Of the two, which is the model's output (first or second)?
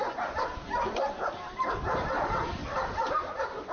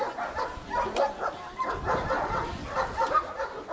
first